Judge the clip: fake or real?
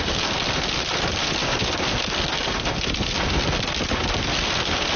real